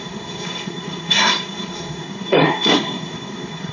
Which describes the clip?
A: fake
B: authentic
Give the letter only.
A